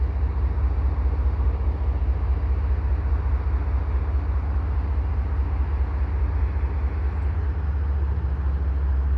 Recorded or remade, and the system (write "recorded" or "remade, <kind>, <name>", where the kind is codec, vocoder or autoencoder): recorded